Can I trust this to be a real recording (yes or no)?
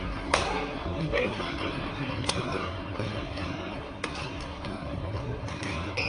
no